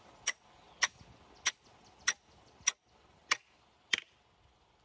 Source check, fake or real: real